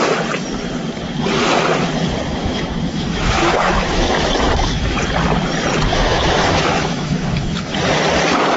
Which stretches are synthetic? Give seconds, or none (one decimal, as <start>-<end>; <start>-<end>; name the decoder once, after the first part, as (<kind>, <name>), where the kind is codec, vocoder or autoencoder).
2.4-4.9 (autoencoder, DAC-VAE); 5.9-7.7